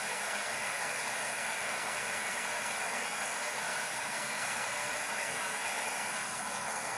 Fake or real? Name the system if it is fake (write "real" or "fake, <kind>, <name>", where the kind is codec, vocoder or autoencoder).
fake, codec, SNAC